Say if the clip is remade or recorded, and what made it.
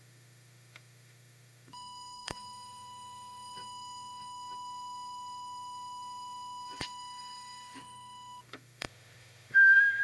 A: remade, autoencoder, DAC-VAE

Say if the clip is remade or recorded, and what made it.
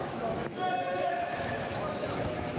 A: remade, autoencoder, DAC-VAE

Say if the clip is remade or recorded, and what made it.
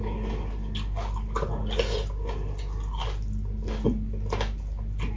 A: recorded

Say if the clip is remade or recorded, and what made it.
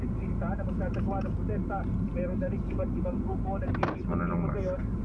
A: recorded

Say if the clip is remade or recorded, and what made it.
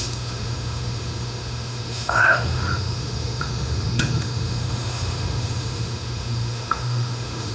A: remade, autoencoder, DAC-VAE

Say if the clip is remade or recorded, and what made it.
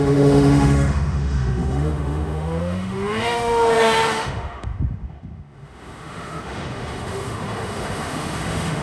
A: remade, autoencoder, DAC-VAE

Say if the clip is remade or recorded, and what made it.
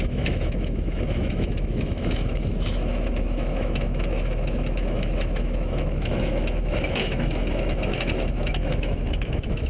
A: remade, autoencoder, DAC-VAE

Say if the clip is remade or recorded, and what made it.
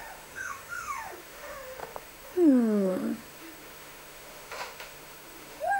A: remade, autoencoder, DAC-VAE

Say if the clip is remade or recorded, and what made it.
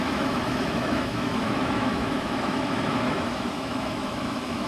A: remade, autoencoder, DAC-VAE